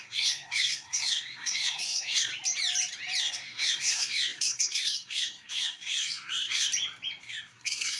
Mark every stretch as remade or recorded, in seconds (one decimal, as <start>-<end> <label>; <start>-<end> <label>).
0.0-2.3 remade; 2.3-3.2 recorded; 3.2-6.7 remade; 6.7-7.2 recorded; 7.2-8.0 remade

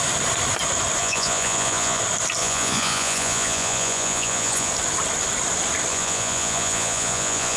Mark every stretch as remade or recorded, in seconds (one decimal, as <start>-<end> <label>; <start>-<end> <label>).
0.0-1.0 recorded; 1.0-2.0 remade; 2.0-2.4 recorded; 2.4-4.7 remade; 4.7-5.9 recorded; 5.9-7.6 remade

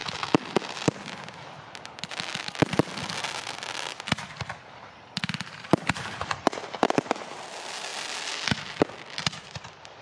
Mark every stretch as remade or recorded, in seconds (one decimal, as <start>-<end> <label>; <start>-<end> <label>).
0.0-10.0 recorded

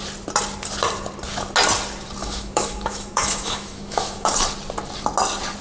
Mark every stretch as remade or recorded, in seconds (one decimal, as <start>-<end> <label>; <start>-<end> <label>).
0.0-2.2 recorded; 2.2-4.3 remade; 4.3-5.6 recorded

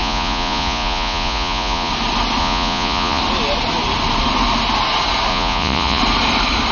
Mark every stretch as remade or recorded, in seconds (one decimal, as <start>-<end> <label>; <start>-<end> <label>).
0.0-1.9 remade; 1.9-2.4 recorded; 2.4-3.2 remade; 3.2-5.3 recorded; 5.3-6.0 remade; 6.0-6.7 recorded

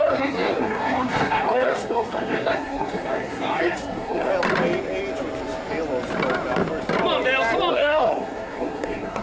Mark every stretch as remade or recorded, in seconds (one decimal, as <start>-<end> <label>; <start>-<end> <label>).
0.0-4.3 remade; 4.3-7.7 recorded; 7.7-9.2 remade